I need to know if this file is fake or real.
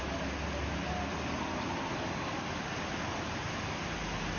real